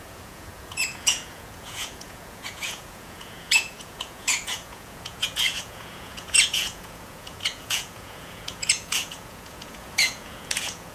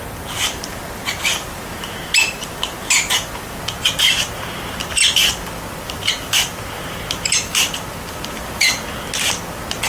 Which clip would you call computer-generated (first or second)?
first